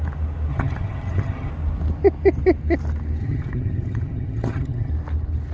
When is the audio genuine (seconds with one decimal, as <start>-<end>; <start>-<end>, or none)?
0.0-0.5; 1.5-3.2; 4.9-5.5